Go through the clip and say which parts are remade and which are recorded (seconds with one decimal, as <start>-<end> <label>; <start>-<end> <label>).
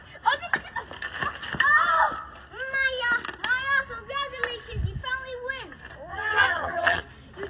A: 0.0-6.1 recorded; 6.1-7.0 remade; 7.0-7.5 recorded